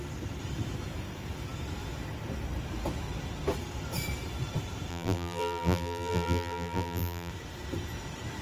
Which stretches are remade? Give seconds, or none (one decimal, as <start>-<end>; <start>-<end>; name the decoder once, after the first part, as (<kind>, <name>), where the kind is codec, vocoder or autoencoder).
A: 4.9-7.3 (vocoder, BigVGAN v2)